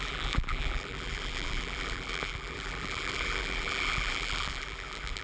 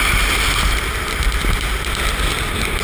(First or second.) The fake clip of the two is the first